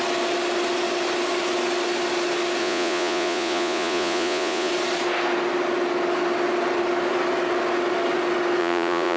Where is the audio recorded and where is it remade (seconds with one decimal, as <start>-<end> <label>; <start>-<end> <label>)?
0.0-2.6 recorded; 2.6-4.7 remade; 4.7-8.6 recorded; 8.6-9.2 remade